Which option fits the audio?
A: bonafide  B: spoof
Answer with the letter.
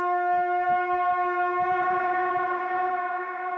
B